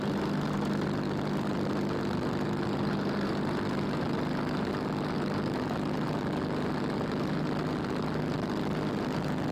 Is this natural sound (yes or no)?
yes